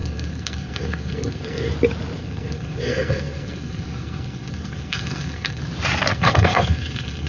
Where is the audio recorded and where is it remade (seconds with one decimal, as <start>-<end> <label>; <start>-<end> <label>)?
0.0-1.7 remade; 1.7-2.2 recorded; 2.2-5.6 remade; 5.6-6.1 recorded; 6.1-7.3 remade